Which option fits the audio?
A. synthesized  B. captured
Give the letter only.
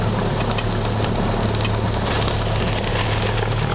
B